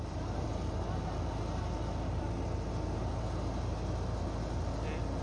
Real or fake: real